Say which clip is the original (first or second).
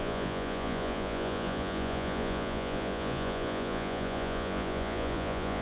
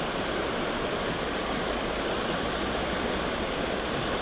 second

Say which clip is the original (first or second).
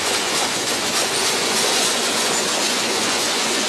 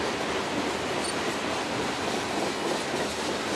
second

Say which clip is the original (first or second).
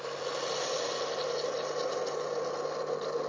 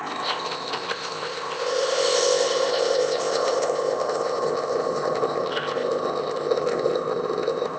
first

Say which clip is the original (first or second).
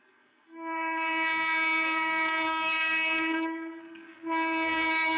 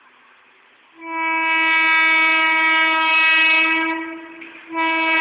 second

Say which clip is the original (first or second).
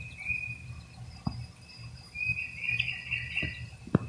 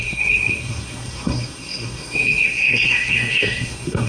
first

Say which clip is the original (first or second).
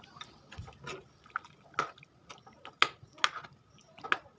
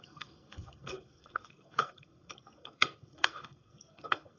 first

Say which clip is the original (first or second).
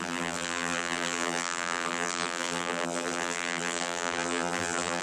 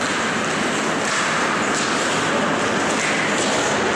second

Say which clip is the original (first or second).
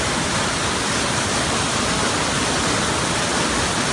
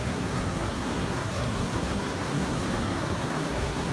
first